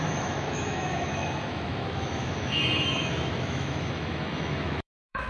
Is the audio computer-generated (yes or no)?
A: yes